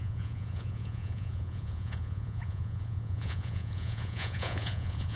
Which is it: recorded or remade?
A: remade